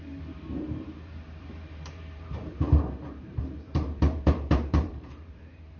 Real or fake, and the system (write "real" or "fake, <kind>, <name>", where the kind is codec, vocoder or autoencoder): fake, vocoder, BigVGAN v2